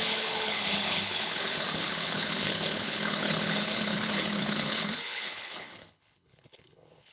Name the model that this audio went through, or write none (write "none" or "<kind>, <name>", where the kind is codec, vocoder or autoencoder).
codec, HILCodec